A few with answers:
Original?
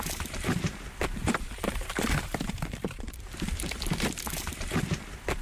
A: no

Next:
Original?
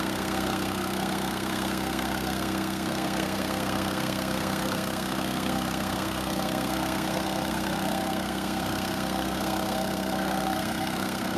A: no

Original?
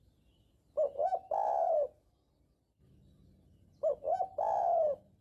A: yes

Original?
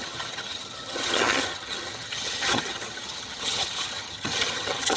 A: no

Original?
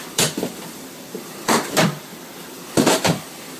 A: no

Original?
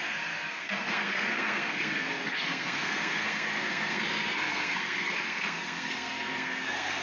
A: no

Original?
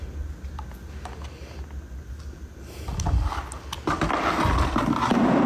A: yes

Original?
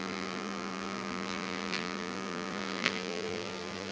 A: no